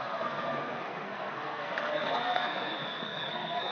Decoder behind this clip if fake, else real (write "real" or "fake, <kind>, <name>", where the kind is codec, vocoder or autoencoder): fake, codec, SNAC